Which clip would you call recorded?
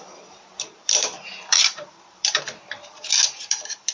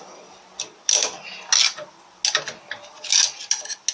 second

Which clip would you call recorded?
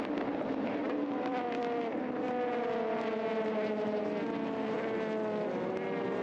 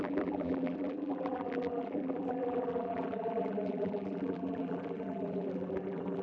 first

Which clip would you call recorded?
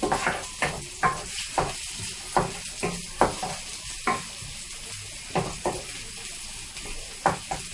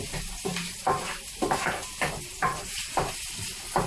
first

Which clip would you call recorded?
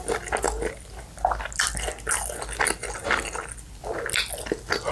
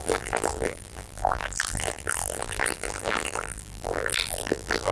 first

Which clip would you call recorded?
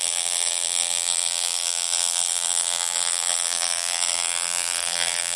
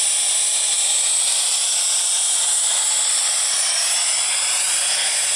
second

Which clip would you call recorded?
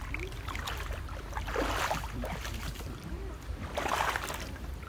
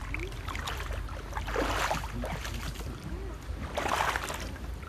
second